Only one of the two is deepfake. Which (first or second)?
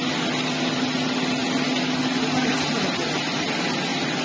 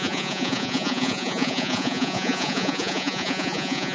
second